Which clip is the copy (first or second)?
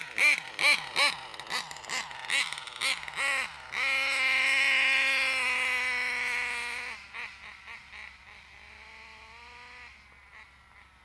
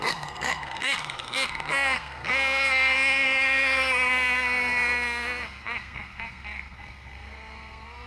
second